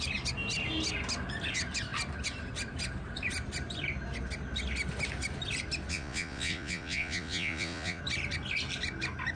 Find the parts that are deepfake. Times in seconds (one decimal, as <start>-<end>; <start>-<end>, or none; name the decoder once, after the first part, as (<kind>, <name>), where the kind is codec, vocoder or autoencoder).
5.9-8.0 (vocoder, Vocos)